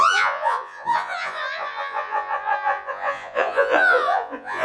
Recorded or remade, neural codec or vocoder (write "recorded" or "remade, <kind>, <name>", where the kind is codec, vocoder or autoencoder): remade, vocoder, Vocos